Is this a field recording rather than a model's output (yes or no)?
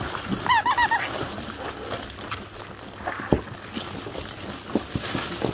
yes